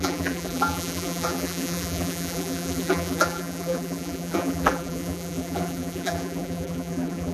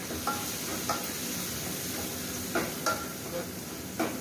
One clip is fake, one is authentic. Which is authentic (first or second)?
second